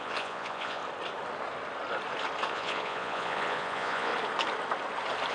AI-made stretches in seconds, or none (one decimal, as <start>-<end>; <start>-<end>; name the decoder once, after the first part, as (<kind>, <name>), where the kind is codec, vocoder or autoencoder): 0.0-0.8 (vocoder, Vocos); 2.5-4.1